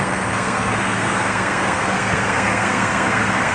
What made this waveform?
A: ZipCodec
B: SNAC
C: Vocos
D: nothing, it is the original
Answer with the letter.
B